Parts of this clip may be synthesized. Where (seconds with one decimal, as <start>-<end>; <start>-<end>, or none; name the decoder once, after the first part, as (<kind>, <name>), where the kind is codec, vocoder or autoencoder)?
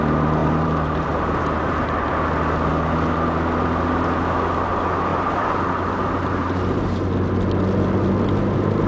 0.4-2.1 (vocoder, BigVGAN v2); 5.1-7.1